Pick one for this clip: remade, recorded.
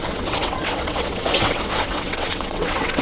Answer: remade